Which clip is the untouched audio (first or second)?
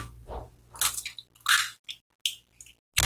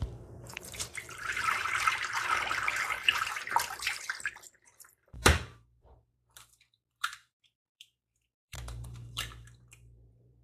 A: first